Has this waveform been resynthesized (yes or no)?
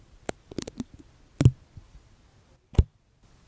no